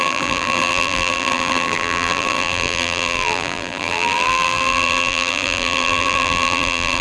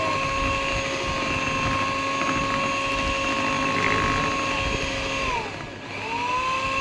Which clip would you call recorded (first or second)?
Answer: second